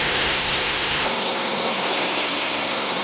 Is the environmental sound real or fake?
fake